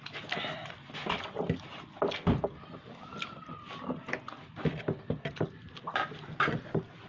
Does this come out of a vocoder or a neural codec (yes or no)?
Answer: no